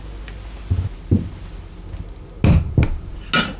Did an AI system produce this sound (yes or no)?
no